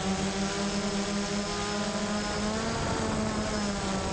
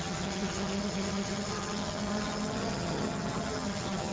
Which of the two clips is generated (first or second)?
second